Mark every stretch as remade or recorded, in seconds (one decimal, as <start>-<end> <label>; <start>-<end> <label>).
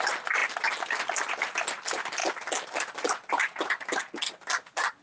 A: 0.0-5.0 recorded